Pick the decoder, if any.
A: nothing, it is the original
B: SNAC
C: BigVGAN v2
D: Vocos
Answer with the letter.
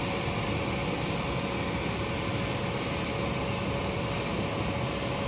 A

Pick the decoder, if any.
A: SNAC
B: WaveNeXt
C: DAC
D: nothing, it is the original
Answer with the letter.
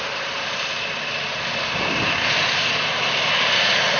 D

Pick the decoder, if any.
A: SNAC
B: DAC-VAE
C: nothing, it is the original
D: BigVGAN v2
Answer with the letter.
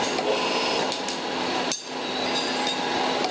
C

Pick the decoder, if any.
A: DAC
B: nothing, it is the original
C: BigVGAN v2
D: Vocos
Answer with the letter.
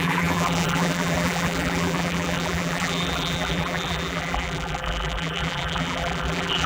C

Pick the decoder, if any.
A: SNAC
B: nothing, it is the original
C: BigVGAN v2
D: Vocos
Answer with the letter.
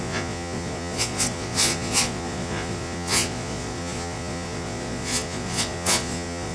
D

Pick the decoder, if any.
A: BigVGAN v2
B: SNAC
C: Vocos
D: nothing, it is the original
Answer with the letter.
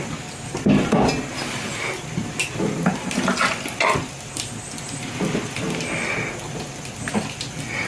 D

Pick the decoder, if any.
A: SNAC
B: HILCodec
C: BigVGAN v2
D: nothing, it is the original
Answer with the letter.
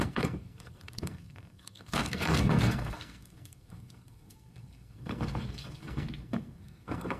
A